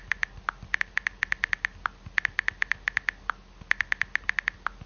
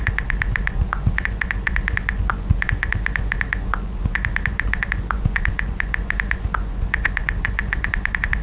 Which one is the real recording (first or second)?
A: first